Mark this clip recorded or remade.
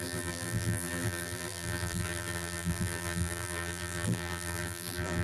remade